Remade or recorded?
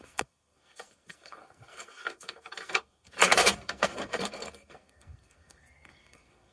remade